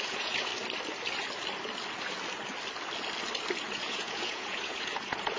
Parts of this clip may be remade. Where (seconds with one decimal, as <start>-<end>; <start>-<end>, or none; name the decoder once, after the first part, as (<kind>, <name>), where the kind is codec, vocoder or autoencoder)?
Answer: 0.0-0.5 (vocoder, Vocos); 3.7-5.4